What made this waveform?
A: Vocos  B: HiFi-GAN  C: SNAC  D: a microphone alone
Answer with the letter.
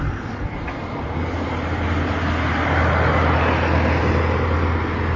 D